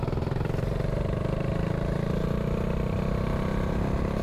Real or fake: real